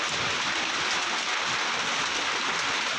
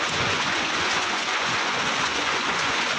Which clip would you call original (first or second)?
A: first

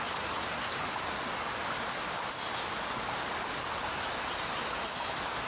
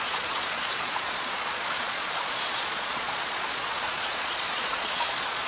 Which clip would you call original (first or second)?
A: first